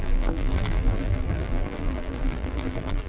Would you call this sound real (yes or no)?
no